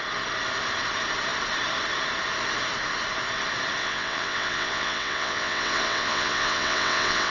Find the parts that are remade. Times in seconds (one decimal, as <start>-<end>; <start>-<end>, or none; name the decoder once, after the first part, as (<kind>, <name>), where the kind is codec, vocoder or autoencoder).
3.8-7.3 (vocoder, WaveNeXt)